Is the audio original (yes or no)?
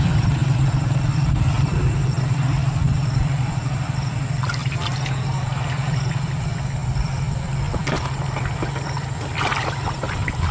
no